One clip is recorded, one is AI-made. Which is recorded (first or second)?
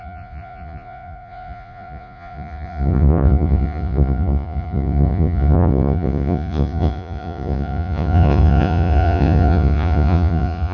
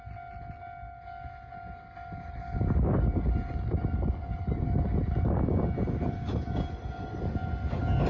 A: second